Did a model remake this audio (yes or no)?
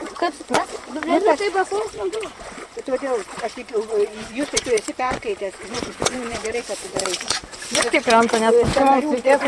yes